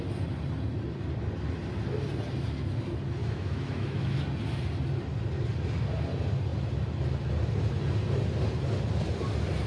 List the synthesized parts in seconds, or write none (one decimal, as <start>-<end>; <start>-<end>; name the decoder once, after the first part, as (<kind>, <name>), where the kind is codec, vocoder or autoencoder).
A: 3.2-4.2 (autoencoder, DAC-VAE)